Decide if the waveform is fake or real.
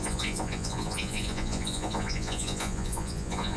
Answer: fake